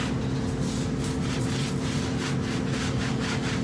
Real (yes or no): yes